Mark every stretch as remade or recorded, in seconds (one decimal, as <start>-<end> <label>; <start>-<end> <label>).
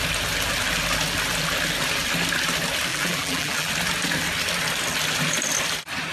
0.0-2.9 recorded; 2.9-3.7 remade; 3.7-6.1 recorded